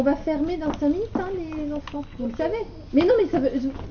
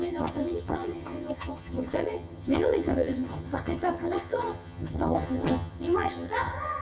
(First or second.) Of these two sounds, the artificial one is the second